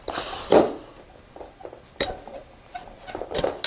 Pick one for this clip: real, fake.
real